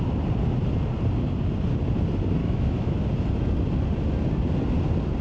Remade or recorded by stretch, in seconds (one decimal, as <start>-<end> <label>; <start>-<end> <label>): 0.0-2.4 recorded; 2.4-3.0 remade; 3.0-5.2 recorded